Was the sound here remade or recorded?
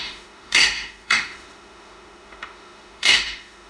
remade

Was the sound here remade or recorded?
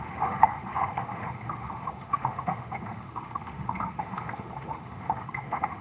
remade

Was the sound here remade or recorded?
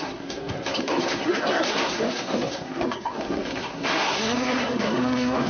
remade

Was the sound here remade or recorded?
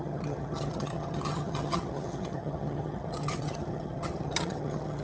remade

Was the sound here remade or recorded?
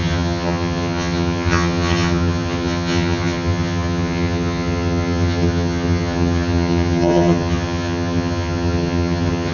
remade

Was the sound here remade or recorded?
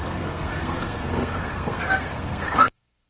remade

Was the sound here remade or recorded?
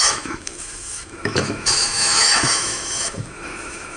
remade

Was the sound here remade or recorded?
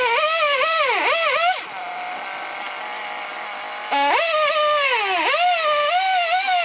recorded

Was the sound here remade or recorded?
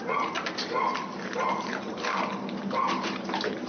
remade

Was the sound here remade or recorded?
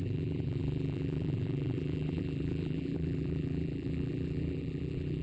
remade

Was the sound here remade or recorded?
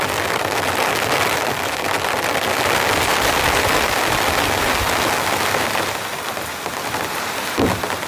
recorded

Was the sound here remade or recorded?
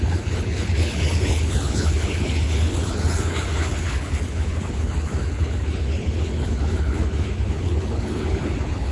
remade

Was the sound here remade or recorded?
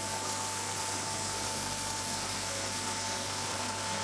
remade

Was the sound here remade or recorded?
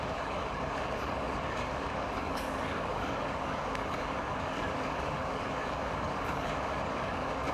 remade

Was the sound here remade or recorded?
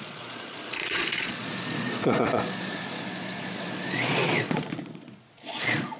remade